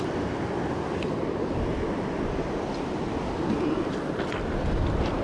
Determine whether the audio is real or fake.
real